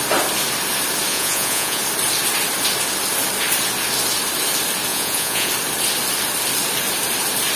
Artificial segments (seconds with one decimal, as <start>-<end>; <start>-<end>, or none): 1.1-1.8; 4.9-5.5